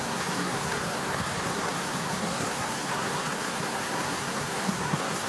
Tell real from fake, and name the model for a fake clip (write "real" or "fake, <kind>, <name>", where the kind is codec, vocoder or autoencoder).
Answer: fake, codec, SNAC